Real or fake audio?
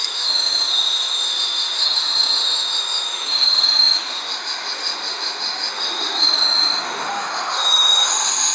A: fake